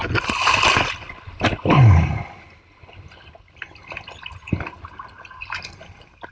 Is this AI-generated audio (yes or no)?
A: no